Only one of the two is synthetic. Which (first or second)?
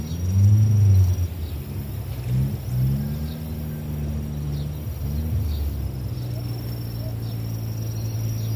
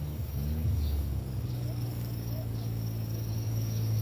second